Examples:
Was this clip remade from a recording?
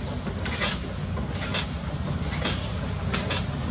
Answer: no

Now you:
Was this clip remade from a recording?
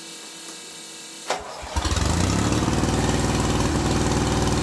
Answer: no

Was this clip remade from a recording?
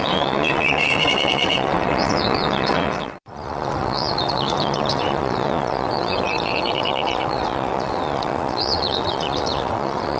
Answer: yes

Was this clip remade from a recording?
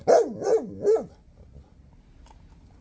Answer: no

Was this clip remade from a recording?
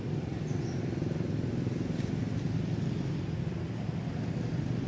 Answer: no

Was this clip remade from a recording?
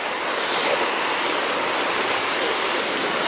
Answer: no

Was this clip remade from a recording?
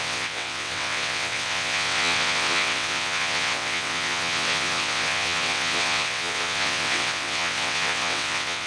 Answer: yes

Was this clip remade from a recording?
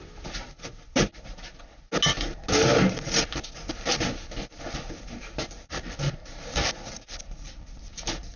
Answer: no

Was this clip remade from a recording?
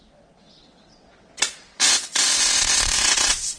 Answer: yes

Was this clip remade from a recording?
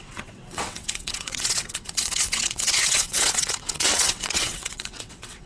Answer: yes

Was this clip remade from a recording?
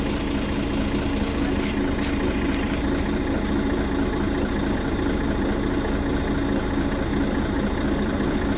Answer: no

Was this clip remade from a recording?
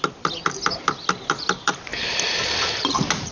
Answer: no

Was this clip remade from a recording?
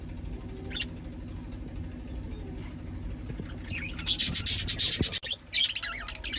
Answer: no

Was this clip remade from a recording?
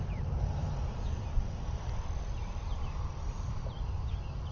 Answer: no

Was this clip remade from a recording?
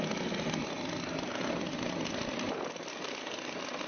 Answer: no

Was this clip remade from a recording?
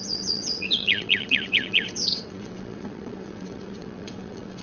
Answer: yes